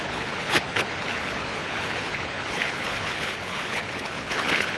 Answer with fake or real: fake